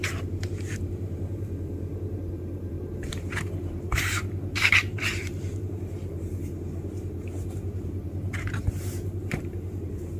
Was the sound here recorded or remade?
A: remade